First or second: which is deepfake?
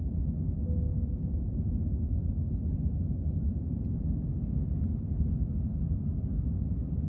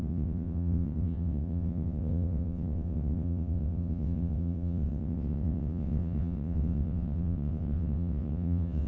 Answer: second